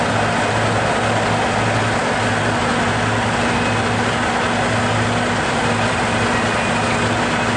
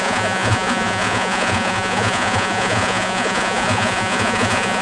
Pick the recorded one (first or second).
first